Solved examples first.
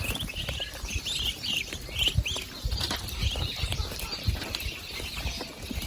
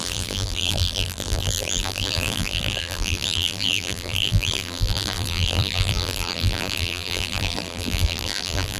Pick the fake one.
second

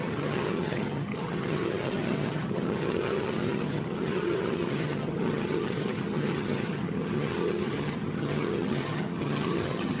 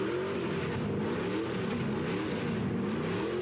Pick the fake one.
first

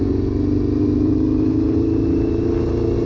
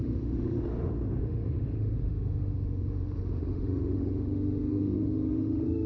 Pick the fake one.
second